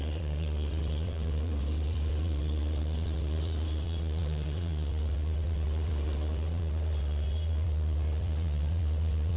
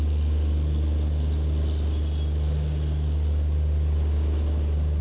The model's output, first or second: first